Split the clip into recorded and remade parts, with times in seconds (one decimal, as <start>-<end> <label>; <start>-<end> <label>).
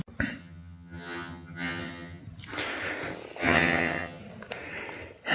0.0-0.4 recorded; 0.4-2.2 remade; 2.2-3.4 recorded; 3.4-4.2 remade; 4.2-5.3 recorded